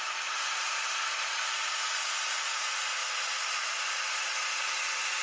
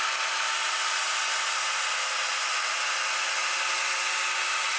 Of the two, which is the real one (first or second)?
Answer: second